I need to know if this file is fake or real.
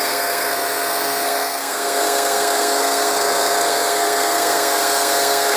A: fake